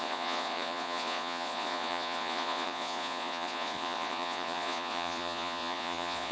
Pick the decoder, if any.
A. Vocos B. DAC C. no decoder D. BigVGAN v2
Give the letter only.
A